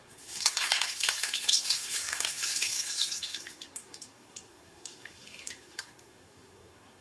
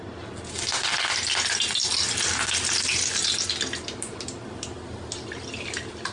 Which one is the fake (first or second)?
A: first